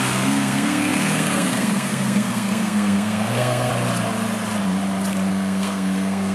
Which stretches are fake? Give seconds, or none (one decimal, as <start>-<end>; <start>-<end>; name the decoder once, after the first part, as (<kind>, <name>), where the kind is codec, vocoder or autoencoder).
0.0-3.7 (codec, SNAC); 5.3-6.3